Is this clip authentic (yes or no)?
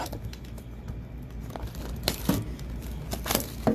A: yes